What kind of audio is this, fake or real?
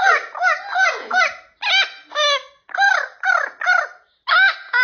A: real